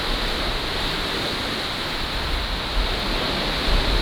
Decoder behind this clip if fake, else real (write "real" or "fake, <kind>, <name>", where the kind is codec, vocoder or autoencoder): real